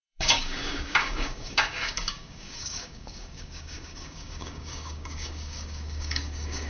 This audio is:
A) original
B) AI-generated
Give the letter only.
B